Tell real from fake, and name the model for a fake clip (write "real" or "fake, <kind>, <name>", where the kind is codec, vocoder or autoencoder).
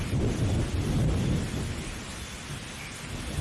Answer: real